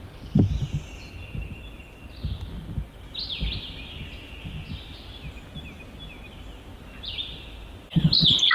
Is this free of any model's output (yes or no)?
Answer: yes